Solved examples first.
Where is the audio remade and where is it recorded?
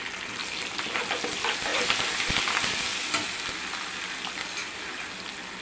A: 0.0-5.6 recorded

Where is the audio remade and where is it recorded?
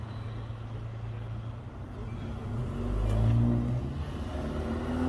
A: 0.0-2.0 recorded; 2.0-2.6 remade; 2.6-5.1 recorded